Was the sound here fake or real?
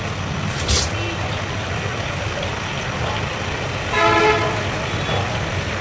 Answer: real